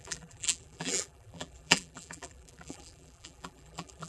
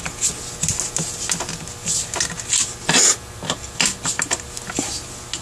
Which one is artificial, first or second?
first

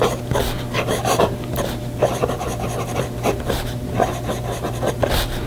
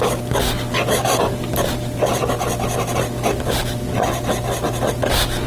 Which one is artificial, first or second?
first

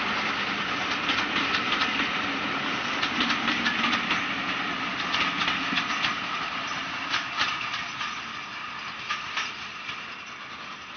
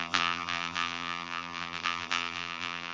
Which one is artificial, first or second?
second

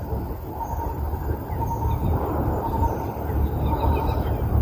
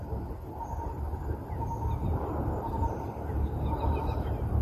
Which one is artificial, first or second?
first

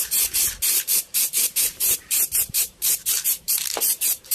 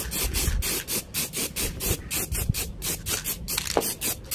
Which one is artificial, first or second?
first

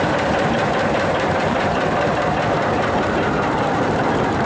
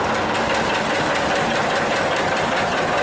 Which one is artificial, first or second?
first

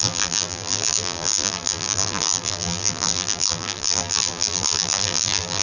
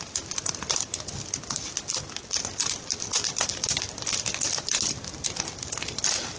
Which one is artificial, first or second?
first